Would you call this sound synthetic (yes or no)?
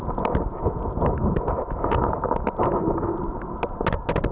no